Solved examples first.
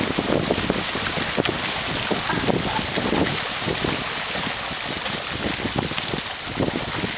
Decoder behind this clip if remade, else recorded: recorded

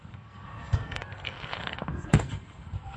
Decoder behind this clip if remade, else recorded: remade, codec, SNAC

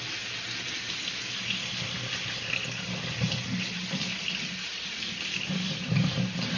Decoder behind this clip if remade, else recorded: recorded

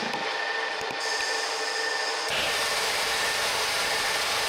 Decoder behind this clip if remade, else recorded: remade, vocoder, BigVGAN v2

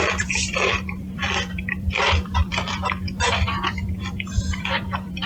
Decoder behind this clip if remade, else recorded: remade, vocoder, BigVGAN v2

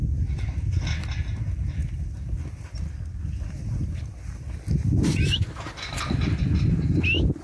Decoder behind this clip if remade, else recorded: recorded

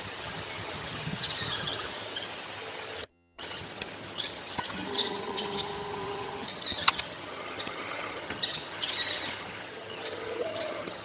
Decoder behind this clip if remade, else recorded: remade, vocoder, HiFi-GAN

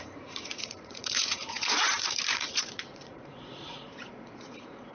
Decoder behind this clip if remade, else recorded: remade, vocoder, Vocos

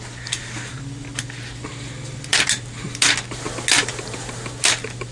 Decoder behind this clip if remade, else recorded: recorded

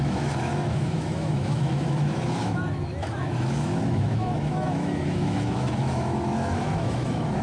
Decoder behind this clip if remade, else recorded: remade, autoencoder, DAC-VAE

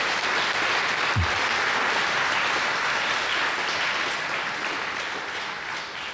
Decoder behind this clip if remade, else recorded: recorded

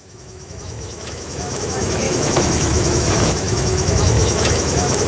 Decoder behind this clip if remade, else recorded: remade, autoencoder, DAC-VAE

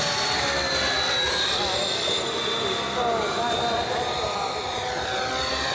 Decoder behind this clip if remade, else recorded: recorded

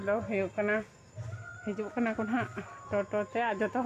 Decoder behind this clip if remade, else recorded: recorded